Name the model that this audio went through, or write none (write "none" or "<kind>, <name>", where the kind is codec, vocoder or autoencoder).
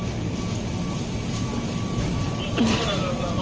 none